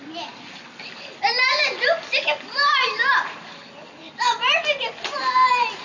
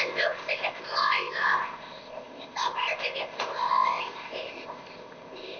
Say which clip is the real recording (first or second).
first